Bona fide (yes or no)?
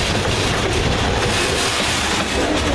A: yes